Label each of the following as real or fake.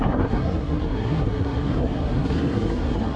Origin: fake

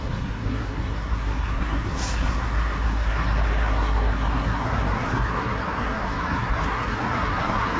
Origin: fake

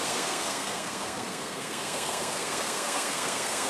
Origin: fake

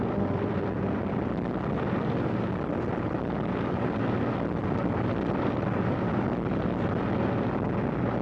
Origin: real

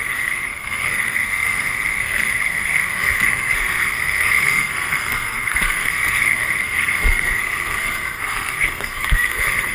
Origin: fake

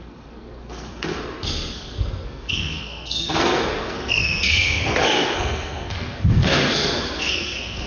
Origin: fake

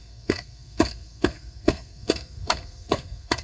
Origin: fake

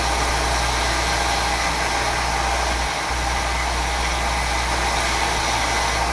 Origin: real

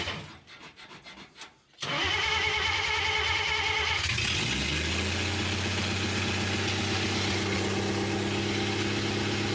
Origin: real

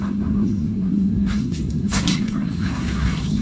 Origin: fake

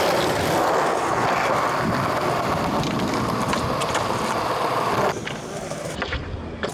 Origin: real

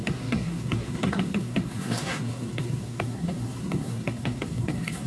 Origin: fake